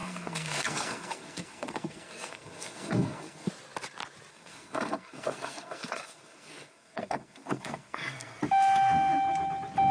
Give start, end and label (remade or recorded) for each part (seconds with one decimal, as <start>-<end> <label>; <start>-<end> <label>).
0.0-3.5 remade; 3.5-4.3 recorded; 4.3-8.4 remade; 8.4-9.9 recorded